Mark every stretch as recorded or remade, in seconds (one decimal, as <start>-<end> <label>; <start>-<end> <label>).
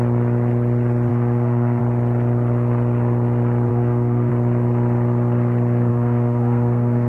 0.0-1.1 recorded; 1.1-1.8 remade; 1.8-3.7 recorded; 3.7-4.3 remade; 4.3-5.9 recorded; 5.9-7.1 remade